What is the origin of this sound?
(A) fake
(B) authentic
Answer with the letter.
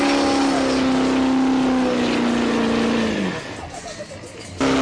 B